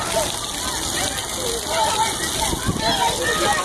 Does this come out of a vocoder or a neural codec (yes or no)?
no